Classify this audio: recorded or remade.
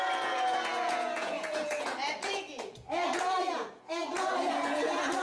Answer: remade